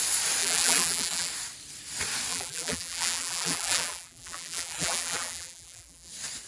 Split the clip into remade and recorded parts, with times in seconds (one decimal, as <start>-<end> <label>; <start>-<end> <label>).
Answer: 0.0-0.4 recorded; 0.4-1.3 remade; 1.3-2.3 recorded; 2.3-6.1 remade; 6.1-6.5 recorded